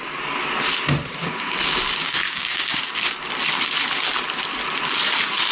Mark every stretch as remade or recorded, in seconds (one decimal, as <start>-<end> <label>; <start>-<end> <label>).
0.0-1.2 recorded; 1.2-2.8 remade; 2.8-5.5 recorded

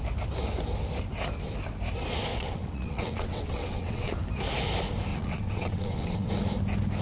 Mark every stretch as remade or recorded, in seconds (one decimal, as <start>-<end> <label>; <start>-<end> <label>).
0.0-2.3 recorded; 2.3-4.1 remade; 4.1-5.1 recorded; 5.1-6.3 remade; 6.3-7.0 recorded